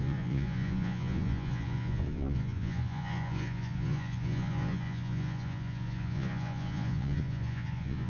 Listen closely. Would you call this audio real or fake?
fake